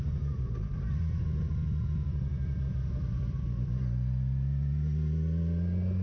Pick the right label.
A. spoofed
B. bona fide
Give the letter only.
B